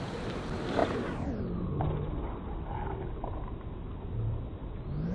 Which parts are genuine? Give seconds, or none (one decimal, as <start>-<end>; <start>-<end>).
0.0-5.1